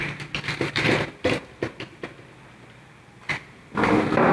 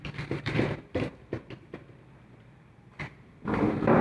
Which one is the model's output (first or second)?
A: second